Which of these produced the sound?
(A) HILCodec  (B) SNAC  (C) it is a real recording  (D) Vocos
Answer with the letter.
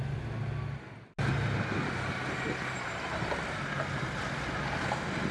C